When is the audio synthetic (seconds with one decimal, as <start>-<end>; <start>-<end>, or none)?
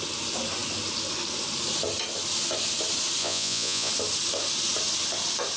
3.2-3.9